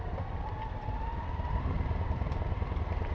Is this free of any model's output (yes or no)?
yes